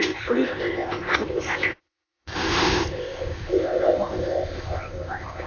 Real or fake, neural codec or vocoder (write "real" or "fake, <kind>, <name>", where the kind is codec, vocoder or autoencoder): fake, codec, ZipCodec